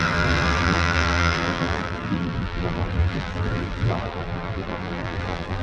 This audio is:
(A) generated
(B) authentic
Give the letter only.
A